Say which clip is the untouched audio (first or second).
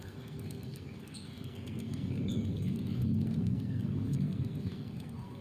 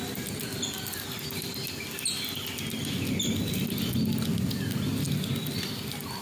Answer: second